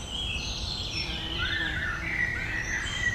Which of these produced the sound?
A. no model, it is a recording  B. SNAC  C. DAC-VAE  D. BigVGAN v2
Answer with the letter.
D